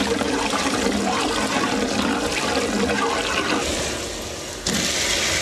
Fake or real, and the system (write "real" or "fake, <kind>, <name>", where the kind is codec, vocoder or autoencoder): real